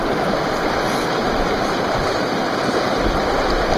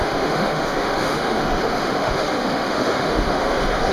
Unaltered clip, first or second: first